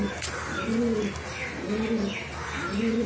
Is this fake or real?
real